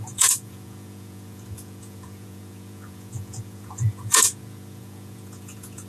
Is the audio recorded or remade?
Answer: remade